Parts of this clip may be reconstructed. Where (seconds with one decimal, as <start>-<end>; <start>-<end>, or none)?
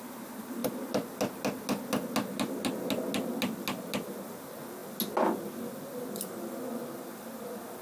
none